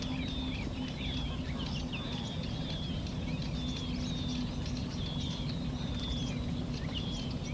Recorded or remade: recorded